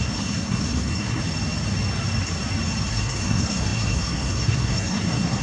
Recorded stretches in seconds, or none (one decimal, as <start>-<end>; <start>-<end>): 1.2-2.9